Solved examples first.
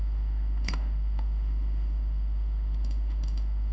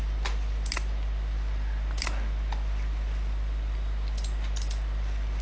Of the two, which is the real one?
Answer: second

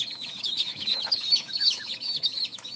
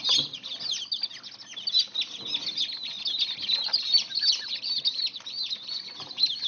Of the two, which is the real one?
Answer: second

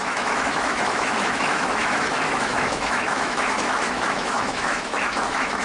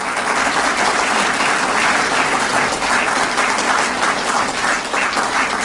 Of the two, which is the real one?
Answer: second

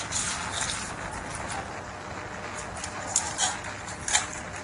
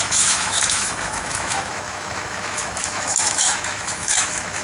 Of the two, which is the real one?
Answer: first